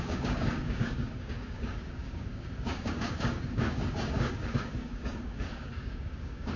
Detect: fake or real fake